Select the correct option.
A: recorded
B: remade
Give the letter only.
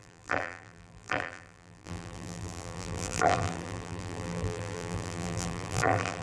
B